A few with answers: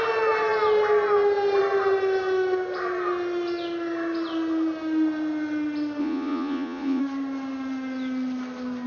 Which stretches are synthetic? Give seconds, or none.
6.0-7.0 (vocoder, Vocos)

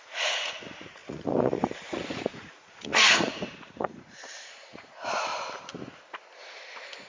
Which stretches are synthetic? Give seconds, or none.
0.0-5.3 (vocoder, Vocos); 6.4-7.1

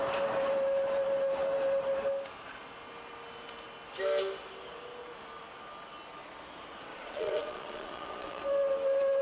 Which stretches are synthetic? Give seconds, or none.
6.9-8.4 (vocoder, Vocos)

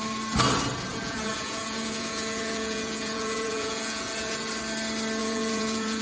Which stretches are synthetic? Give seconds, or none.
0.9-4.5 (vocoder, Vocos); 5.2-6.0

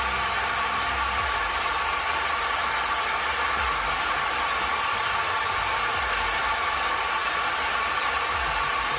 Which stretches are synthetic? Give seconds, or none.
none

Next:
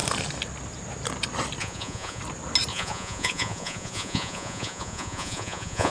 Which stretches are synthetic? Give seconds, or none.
1.6-2.2 (vocoder, Vocos); 2.7-5.9